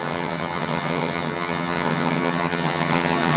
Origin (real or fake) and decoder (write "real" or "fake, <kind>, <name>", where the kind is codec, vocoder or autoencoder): fake, vocoder, HiFi-GAN